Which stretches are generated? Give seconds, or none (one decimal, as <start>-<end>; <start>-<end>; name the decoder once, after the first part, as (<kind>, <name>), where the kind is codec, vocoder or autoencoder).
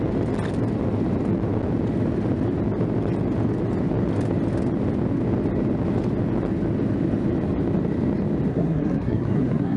8.5-9.8 (codec, SNAC)